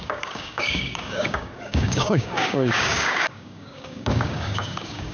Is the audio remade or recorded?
remade